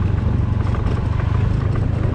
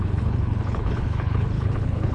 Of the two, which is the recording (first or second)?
first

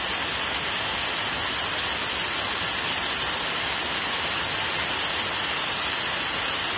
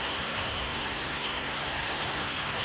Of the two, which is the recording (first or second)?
first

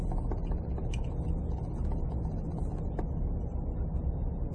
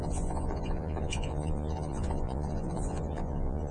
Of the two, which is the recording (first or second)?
first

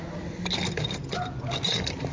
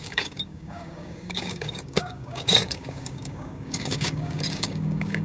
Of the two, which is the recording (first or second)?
first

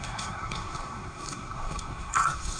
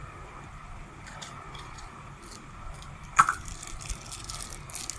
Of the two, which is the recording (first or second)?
second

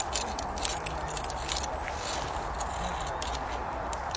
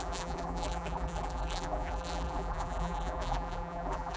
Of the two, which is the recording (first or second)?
first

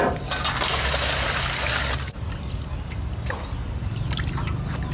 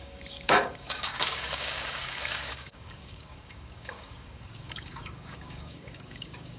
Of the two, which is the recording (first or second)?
first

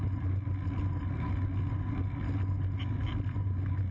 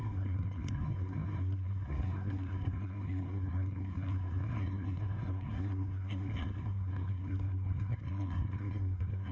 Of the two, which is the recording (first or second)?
first